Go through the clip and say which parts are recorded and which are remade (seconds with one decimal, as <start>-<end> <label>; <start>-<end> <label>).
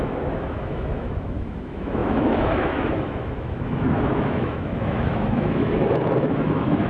0.0-6.9 remade